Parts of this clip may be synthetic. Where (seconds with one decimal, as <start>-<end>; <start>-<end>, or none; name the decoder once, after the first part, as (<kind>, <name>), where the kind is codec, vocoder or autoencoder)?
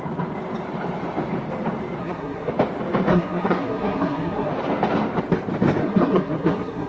2.0-2.5 (codec, SNAC); 3.1-4.5; 5.8-6.9